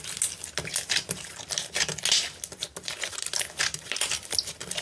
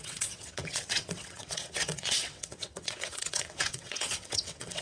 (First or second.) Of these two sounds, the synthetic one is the second